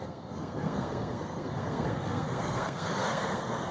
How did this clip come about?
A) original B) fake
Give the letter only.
B